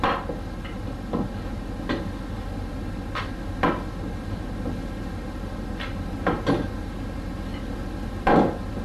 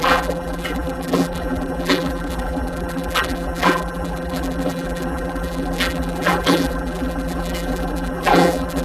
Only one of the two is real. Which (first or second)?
first